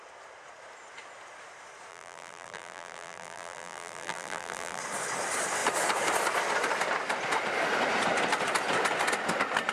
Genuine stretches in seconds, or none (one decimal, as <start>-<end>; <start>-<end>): 0.0-1.9; 4.8-9.7

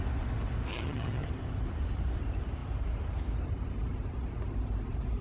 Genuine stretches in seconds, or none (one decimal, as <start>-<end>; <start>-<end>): 0.0-0.7; 1.3-5.2